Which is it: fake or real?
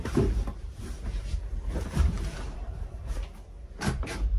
fake